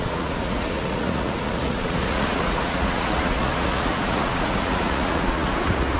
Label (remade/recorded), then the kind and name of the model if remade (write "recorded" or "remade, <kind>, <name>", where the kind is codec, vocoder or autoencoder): remade, vocoder, Vocos